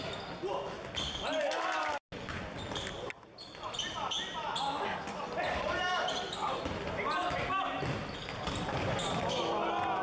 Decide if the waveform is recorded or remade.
recorded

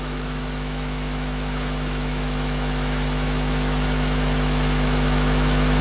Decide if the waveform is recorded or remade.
remade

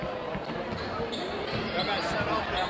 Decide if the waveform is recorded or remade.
recorded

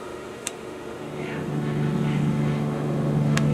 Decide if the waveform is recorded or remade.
remade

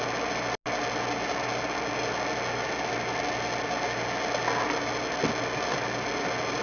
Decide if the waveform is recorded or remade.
recorded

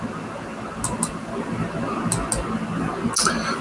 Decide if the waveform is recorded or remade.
recorded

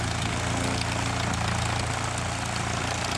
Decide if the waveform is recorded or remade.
recorded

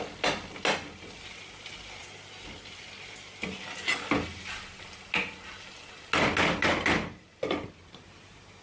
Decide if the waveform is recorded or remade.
recorded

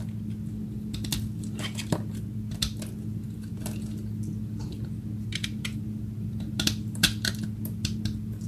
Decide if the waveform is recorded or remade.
recorded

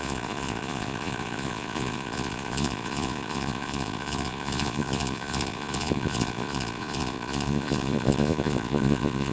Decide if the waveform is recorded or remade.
remade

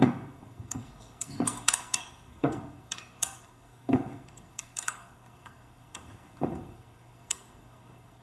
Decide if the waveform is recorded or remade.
remade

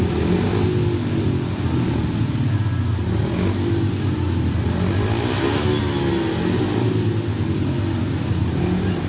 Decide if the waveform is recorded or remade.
recorded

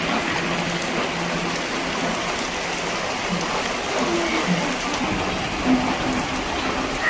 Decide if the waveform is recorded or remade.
recorded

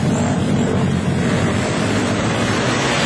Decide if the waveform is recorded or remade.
recorded